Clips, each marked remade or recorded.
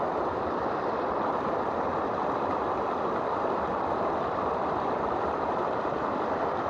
remade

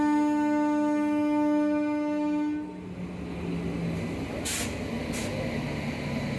recorded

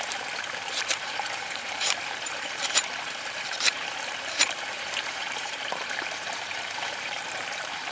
remade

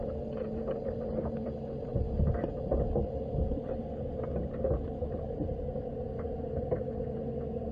remade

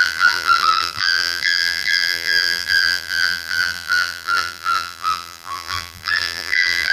remade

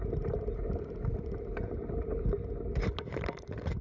recorded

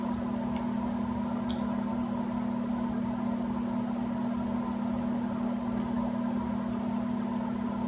recorded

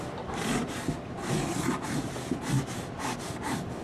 recorded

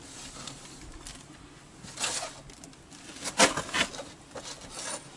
recorded